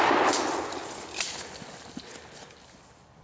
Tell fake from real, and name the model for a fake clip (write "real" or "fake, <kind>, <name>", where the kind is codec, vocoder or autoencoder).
real